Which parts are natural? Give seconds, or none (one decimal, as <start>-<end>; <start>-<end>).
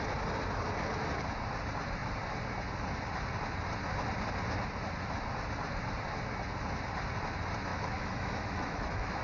0.0-7.7